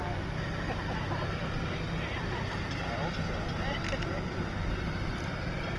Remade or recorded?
recorded